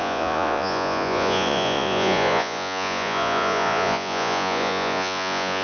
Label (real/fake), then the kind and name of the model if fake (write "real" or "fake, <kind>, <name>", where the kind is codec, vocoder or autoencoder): fake, vocoder, Vocos